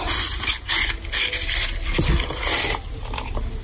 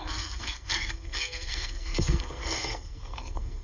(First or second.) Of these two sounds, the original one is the first